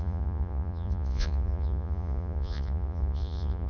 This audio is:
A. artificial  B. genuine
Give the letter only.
A